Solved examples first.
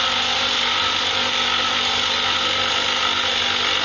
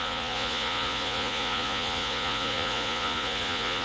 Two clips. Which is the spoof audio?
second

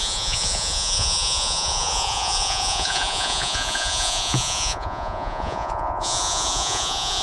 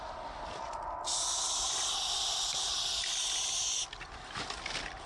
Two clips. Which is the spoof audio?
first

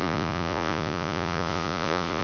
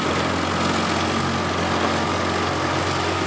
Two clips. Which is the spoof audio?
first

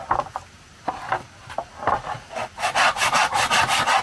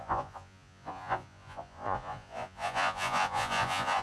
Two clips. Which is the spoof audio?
second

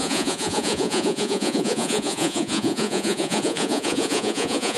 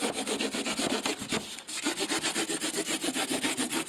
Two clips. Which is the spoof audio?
first